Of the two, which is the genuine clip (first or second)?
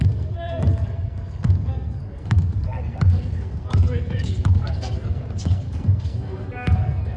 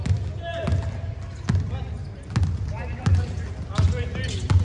second